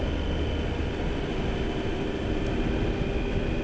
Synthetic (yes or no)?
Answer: no